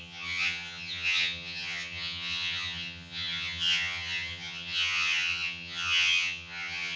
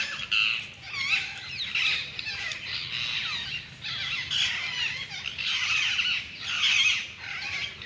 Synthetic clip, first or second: first